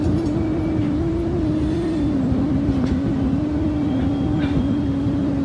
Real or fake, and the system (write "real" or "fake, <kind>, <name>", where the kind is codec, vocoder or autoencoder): real